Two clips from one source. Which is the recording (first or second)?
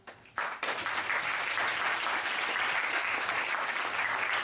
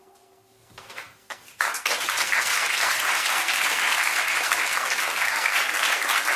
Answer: first